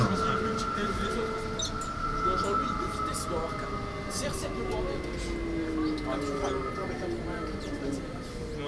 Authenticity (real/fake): real